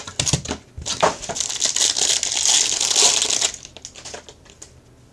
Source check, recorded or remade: recorded